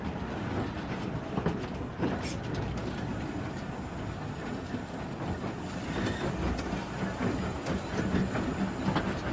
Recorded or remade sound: recorded